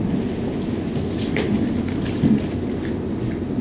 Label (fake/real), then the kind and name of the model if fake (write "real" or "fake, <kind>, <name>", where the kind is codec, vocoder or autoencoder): real